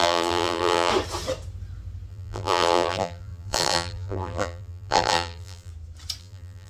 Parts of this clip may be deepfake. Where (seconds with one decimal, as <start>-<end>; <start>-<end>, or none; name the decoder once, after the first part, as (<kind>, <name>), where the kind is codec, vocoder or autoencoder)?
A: 0.0-0.9 (vocoder, BigVGAN v2); 2.1-5.7; 6.2-6.7